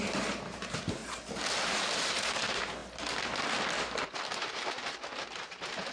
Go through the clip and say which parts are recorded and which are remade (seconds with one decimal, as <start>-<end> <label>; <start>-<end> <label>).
0.0-1.0 remade; 1.0-1.7 recorded; 1.7-2.8 remade; 2.8-4.2 recorded; 4.2-5.9 remade